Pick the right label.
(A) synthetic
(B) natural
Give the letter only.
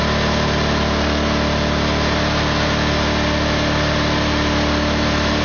B